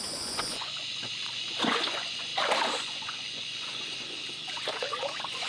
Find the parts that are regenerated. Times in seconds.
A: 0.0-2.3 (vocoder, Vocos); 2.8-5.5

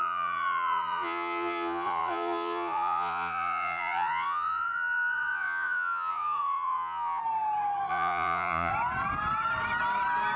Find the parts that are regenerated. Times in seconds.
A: 0.0-7.2 (vocoder, Vocos); 7.9-8.7

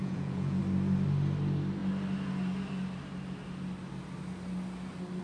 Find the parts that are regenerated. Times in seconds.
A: 0.0-0.6 (vocoder, Vocos)

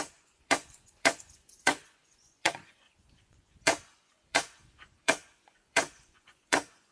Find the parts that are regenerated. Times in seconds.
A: 0.0-6.9 (vocoder, Vocos)

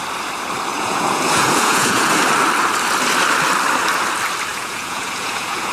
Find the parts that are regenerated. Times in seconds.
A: 0.7-2.1 (vocoder, Vocos); 4.5-5.7

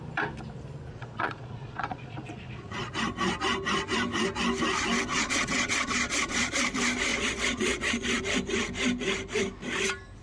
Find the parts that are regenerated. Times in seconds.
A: 0.9-2.9 (vocoder, Vocos); 5.1-6.5; 7.1-8.2

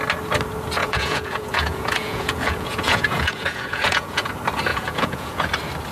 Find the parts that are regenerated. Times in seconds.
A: 0.8-4.3 (vocoder, Vocos); 4.7-5.5